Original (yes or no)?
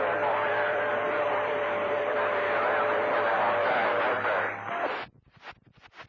no